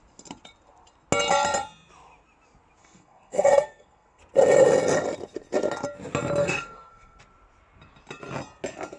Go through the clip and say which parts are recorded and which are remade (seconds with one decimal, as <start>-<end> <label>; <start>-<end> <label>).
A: 0.0-2.8 recorded; 2.8-4.2 remade; 4.2-6.4 recorded; 6.4-7.2 remade; 7.2-9.0 recorded